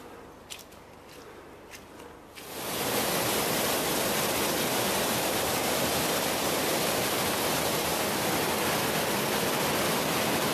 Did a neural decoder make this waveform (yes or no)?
no